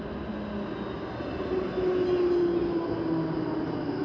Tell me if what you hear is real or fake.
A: real